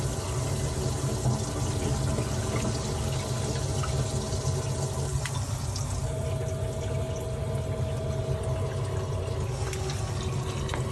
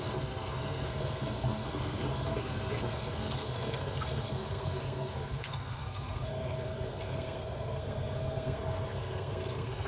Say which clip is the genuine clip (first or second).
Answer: first